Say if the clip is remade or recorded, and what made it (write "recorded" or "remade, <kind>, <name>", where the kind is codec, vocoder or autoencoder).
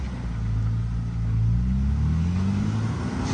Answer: recorded